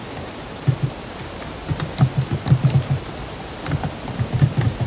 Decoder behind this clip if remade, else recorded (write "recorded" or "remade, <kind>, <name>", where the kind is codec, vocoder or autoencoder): recorded